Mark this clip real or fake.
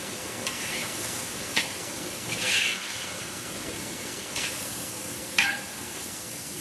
fake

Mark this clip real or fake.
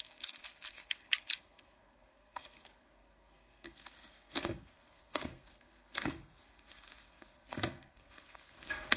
fake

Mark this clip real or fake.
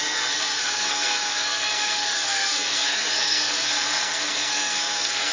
fake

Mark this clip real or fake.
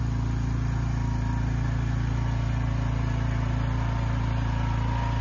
real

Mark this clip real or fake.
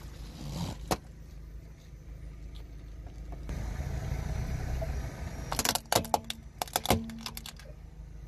real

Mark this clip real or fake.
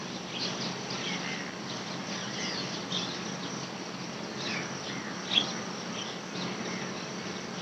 real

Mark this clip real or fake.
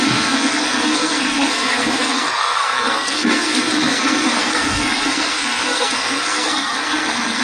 fake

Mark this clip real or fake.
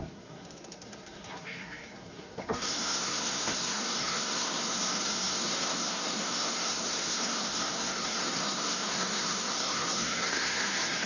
fake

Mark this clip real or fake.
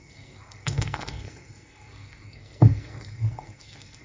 fake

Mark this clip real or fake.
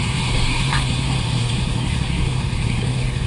fake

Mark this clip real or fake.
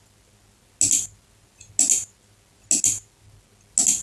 real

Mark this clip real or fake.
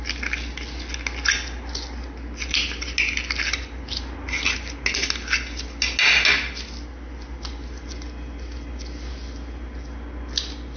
real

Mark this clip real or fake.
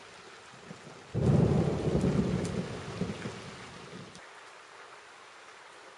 real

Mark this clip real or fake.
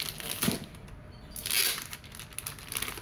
real